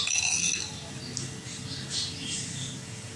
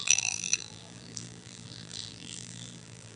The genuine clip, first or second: first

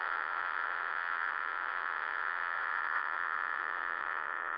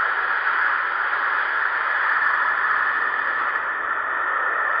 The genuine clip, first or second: second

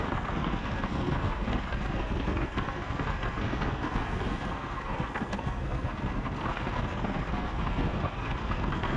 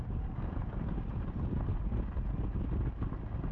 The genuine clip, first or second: second